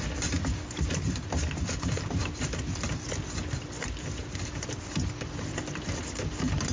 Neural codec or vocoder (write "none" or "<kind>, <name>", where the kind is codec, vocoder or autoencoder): none